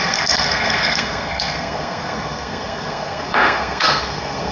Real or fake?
fake